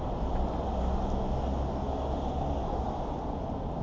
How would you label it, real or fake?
real